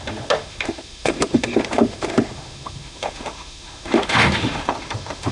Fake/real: fake